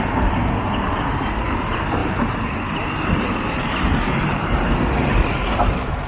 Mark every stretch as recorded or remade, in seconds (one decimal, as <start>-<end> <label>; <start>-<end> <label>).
0.0-2.0 recorded; 2.0-6.1 remade